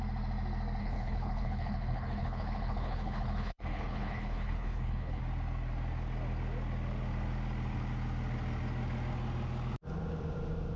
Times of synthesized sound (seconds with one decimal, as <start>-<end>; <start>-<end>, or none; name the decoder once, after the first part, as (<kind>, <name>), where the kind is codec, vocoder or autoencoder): 0.8-5.2 (codec, HILCodec)